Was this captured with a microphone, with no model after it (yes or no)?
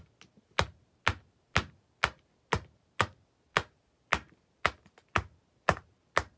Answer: yes